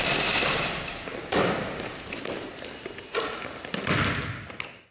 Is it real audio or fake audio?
real